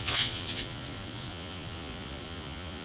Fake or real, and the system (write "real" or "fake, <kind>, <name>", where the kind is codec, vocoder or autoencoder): fake, vocoder, Vocos